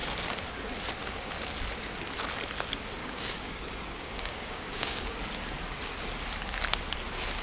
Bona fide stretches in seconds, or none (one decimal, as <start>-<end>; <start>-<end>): 0.0-3.0; 5.2-7.4

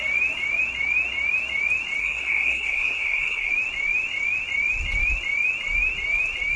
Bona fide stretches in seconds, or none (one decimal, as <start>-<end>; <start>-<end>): 0.0-2.0; 3.5-6.6

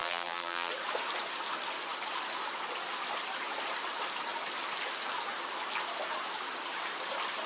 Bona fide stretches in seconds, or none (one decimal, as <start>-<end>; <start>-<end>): 0.7-7.5

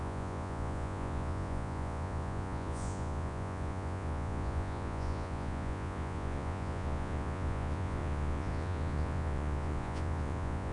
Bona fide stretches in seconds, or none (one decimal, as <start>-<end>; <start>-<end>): none

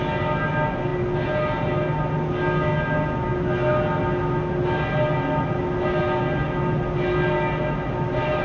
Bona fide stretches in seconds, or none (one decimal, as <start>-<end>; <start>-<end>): 0.0-8.4

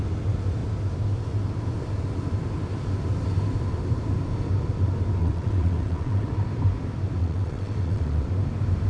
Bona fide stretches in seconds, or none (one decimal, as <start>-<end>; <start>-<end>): 0.0-5.2; 6.3-7.2; 8.3-8.9

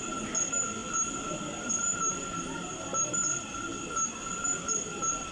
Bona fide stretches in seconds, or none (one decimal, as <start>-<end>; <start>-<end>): 0.0-5.3